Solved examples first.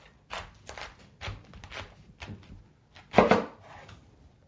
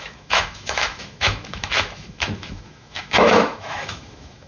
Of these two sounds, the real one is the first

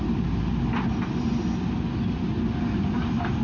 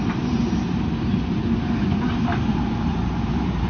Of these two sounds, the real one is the first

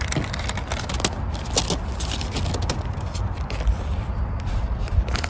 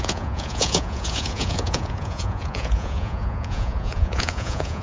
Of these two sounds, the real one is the first